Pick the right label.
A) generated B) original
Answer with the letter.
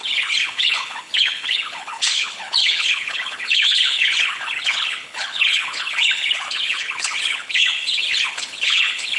A